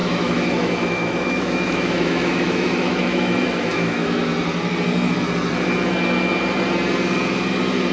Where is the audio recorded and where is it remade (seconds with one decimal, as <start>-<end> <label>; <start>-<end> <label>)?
0.0-4.3 remade; 4.3-7.9 recorded